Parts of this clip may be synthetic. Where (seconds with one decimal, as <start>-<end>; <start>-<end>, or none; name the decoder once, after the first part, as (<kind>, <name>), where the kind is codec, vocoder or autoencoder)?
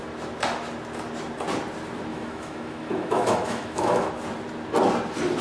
2.1-4.1 (autoencoder, DAC-VAE)